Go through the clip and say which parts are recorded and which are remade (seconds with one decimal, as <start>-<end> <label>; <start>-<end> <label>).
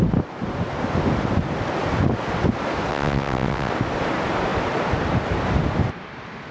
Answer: 0.0-2.9 recorded; 2.9-3.7 remade; 3.7-6.5 recorded